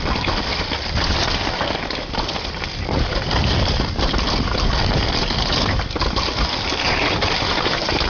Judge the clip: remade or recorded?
recorded